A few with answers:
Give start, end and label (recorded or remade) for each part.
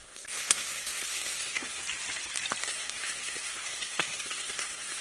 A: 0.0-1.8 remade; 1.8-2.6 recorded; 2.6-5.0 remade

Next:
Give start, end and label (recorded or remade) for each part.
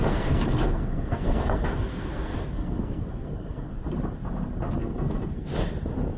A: 0.0-3.7 remade; 3.7-4.8 recorded; 4.8-5.5 remade; 5.5-6.2 recorded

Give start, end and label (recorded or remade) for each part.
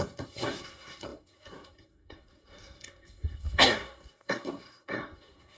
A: 0.0-5.6 remade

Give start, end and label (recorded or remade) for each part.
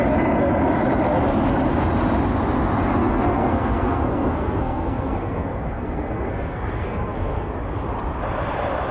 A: 0.0-3.0 recorded; 3.0-7.5 remade; 7.5-8.9 recorded